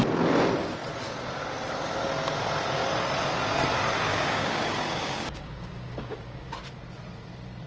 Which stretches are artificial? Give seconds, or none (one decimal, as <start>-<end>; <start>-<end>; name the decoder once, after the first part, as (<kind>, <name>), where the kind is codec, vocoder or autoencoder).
4.1-6.5 (codec, DAC)